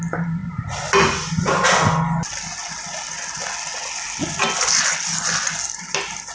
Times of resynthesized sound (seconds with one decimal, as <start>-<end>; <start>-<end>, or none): none